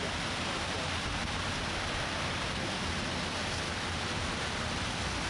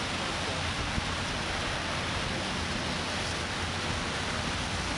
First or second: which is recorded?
second